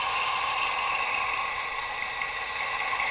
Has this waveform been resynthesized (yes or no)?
no